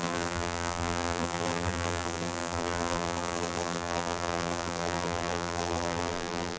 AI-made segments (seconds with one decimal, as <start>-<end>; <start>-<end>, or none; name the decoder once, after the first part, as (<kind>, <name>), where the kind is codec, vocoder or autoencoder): 0.0-6.6 (vocoder, BigVGAN v2)